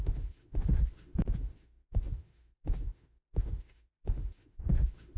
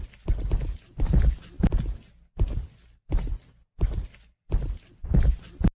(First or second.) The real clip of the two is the second